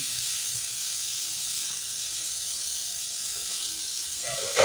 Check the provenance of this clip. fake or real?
fake